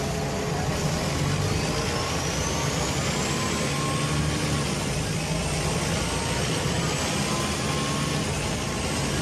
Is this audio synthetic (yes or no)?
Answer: no